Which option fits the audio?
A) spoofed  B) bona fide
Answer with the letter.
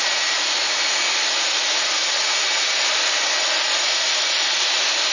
B